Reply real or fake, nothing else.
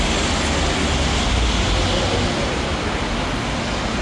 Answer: real